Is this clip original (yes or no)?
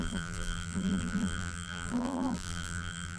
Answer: no